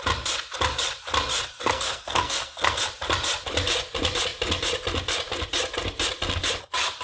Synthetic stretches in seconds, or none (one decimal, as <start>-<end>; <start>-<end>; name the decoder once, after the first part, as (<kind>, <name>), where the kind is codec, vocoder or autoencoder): 1.3-2.8 (codec, SNAC)